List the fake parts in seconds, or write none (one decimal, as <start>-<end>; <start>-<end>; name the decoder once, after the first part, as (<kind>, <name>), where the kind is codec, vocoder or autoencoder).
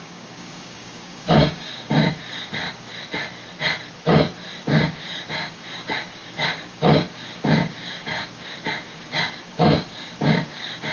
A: 0.0-2.9 (codec, DAC); 4.6-10.9